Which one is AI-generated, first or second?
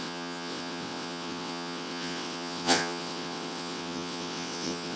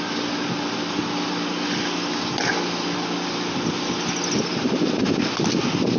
first